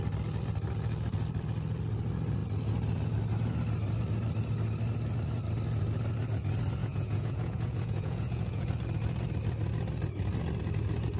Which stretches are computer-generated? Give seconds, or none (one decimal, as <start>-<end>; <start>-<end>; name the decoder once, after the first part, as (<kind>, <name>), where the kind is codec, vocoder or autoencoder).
6.8-8.7 (vocoder, Vocos)